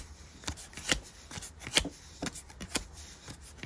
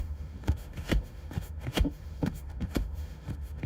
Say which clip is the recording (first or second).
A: first